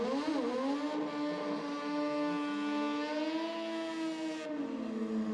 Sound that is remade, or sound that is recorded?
recorded